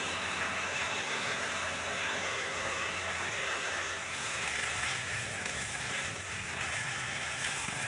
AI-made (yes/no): yes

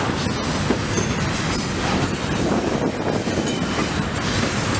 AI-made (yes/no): no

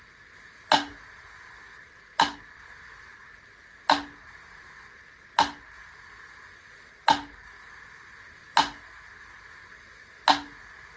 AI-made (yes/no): no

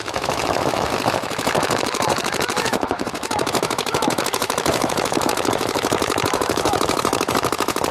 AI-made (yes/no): yes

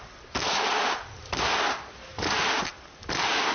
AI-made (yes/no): yes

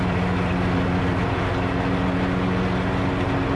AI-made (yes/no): no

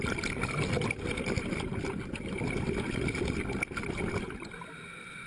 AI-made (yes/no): no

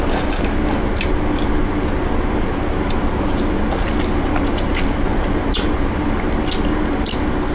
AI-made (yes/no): no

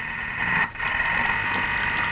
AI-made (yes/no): no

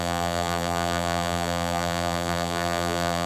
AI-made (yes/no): yes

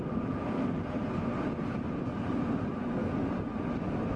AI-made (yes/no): no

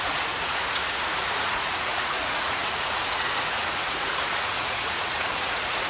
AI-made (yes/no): yes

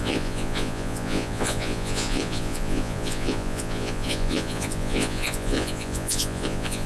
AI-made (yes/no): yes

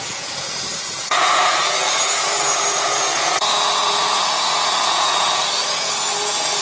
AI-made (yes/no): yes